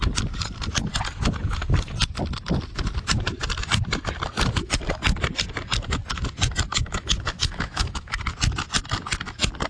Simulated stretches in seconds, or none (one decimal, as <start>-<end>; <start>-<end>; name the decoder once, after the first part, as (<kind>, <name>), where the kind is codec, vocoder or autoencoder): 6.7-8.3 (autoencoder, DAC-VAE)